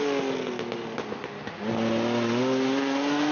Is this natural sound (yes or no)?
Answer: yes